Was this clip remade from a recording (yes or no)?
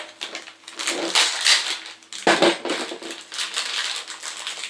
no